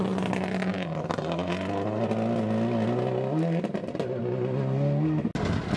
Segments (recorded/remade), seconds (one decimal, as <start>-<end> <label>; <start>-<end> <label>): 0.0-5.8 recorded